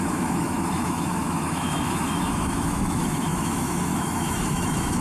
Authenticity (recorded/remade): remade